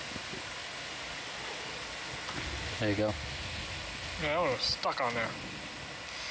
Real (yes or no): yes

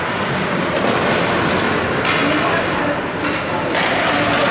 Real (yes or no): yes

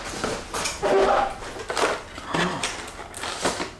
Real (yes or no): yes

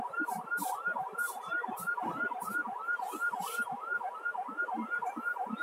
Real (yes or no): no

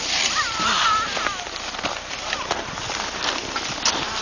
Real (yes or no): no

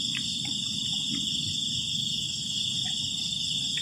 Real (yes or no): yes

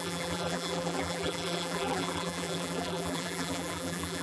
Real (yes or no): no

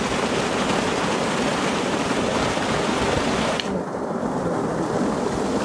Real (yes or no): yes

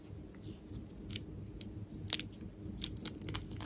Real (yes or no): yes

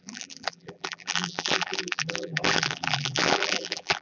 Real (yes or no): no